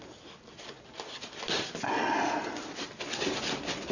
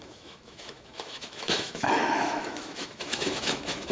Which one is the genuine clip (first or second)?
first